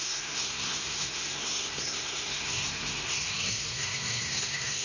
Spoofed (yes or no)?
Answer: yes